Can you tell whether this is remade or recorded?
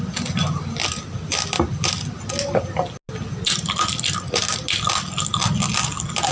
recorded